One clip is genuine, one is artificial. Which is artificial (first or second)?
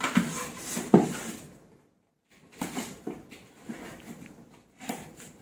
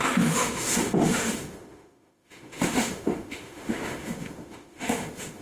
second